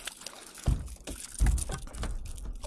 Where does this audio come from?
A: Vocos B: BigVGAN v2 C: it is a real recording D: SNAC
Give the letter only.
C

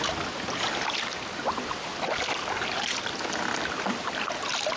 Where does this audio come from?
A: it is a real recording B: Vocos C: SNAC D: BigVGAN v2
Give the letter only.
A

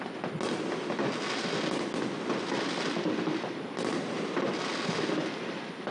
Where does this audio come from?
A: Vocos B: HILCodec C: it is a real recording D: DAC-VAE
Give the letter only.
C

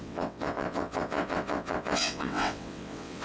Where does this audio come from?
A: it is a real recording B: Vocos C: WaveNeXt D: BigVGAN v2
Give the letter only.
C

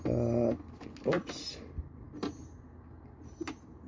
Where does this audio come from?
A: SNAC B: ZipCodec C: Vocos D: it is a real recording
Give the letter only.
D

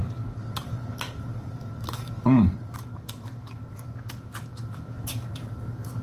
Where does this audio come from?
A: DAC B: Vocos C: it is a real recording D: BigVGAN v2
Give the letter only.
A